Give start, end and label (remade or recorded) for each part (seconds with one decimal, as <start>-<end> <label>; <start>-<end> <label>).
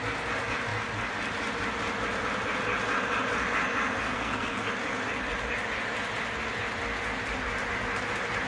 0.0-4.0 recorded; 4.0-4.7 remade; 4.7-8.5 recorded